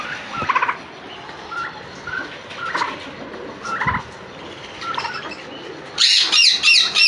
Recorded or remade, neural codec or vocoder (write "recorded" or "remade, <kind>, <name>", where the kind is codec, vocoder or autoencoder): recorded